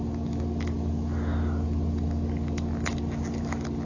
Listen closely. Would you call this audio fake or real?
real